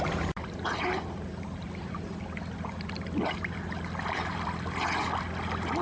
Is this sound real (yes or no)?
yes